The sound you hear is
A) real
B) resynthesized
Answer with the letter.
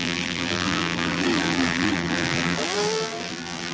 B